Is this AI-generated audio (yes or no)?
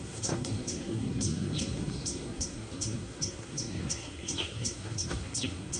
yes